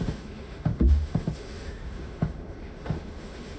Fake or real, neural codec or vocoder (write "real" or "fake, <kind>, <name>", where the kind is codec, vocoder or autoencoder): fake, autoencoder, DAC-VAE